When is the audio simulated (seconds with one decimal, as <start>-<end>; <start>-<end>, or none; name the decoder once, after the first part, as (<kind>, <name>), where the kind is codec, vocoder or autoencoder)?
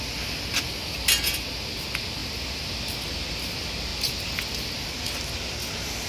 none